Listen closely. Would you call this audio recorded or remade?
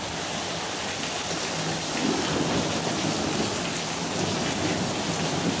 recorded